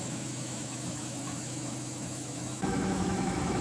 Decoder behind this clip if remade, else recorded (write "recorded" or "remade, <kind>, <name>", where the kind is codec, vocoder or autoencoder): remade, autoencoder, DAC-VAE